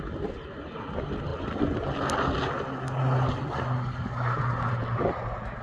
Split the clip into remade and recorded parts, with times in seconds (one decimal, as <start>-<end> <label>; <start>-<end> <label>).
0.0-5.6 recorded

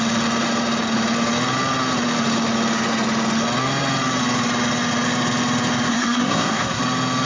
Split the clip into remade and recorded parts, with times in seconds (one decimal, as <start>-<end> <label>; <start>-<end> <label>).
0.0-5.9 recorded; 5.9-6.8 remade; 6.8-7.2 recorded